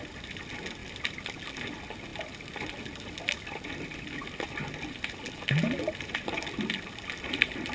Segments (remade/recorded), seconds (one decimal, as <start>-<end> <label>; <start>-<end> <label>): 0.0-7.7 recorded